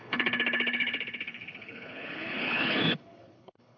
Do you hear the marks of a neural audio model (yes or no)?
yes